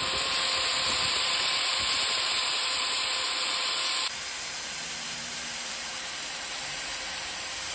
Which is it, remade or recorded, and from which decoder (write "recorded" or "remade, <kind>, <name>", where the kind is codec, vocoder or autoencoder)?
remade, vocoder, BigVGAN v2